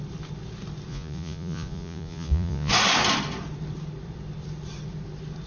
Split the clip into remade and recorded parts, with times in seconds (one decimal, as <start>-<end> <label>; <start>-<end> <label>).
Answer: 0.0-0.9 recorded; 0.9-2.7 remade; 2.7-5.5 recorded